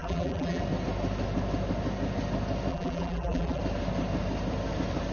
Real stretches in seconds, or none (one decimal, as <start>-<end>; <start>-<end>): 0.6-2.7; 3.6-5.1